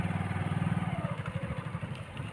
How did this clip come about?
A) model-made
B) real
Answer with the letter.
B